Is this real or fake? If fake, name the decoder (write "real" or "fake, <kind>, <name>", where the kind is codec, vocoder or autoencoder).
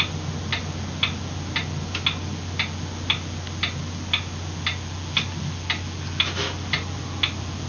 real